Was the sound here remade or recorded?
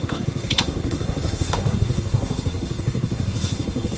remade